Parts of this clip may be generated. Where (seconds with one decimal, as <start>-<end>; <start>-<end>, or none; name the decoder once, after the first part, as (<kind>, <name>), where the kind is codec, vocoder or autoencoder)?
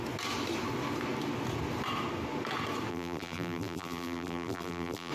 2.9-5.1 (vocoder, BigVGAN v2)